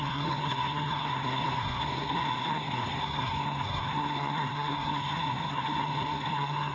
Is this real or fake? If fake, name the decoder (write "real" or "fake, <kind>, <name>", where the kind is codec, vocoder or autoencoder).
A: fake, codec, SNAC